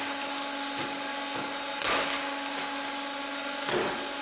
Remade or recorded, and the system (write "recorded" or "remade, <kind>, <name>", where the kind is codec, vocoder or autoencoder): recorded